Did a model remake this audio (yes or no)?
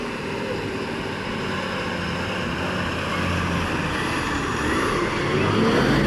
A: no